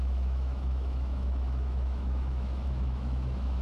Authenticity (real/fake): fake